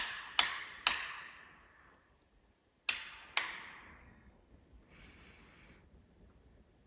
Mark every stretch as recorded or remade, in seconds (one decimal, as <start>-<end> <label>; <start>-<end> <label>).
0.0-4.0 recorded; 4.0-4.5 remade; 4.5-6.9 recorded